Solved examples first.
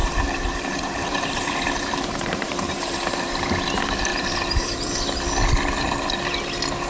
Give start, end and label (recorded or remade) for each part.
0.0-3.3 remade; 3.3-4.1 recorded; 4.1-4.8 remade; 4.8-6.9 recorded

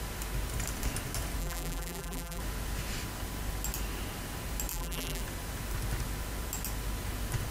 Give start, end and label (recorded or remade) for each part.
0.0-1.4 recorded; 1.4-2.4 remade; 2.4-4.7 recorded; 4.7-5.2 remade; 5.2-7.5 recorded